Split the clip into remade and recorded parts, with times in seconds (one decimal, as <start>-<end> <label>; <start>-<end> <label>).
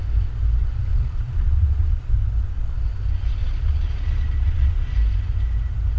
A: 0.0-0.9 recorded; 0.9-2.1 remade; 2.1-3.4 recorded; 3.4-4.9 remade; 4.9-6.0 recorded